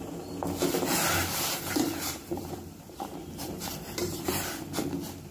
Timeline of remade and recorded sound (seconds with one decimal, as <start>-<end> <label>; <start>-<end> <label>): 0.0-1.2 recorded; 1.2-4.4 remade; 4.4-5.3 recorded